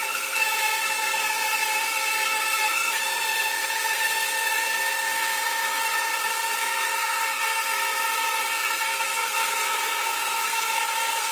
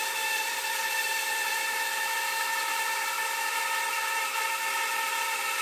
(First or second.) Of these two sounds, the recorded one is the second